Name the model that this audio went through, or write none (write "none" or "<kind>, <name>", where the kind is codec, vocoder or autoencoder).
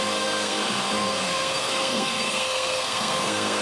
codec, SNAC